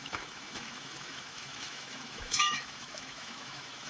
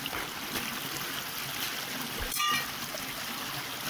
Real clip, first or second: second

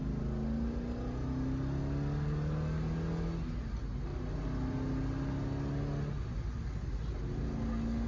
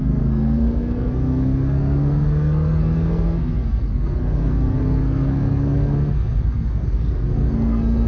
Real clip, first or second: first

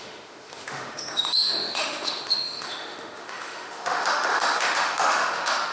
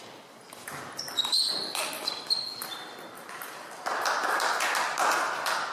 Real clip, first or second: second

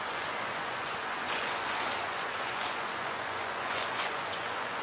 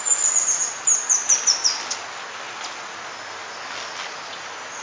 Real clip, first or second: second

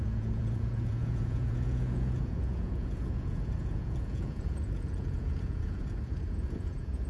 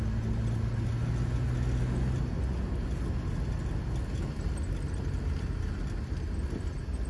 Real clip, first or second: second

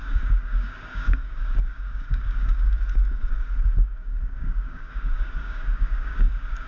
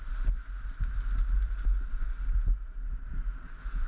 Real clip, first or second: second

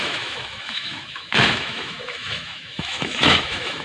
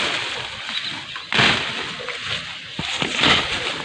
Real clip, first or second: second